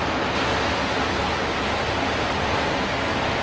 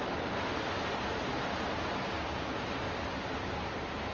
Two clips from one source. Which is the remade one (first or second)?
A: second